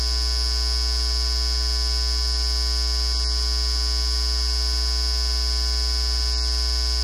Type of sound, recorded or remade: recorded